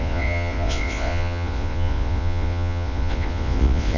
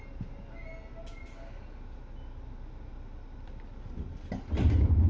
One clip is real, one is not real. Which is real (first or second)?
second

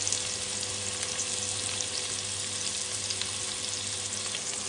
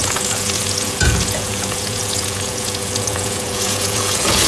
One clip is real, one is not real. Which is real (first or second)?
first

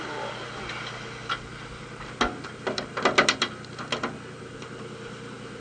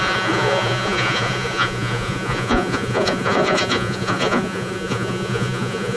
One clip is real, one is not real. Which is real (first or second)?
first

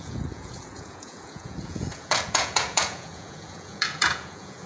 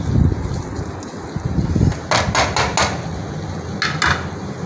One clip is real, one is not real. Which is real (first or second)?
second